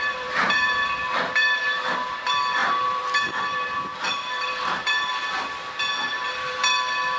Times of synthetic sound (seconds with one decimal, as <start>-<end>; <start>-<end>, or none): 0.0-5.2; 6.1-6.6